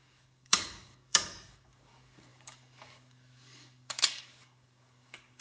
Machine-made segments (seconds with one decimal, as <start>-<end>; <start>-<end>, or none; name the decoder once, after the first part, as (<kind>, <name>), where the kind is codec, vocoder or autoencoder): 0.0-5.4 (codec, DAC)